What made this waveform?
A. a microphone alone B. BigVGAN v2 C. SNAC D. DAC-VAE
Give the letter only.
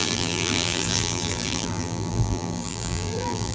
B